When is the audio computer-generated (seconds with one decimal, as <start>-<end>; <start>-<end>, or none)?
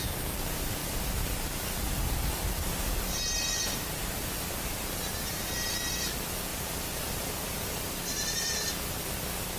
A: 6.5-8.7